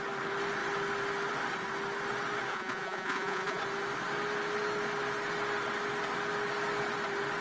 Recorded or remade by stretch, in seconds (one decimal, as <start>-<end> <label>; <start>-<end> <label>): 0.0-2.5 recorded; 2.5-3.6 remade; 3.6-7.4 recorded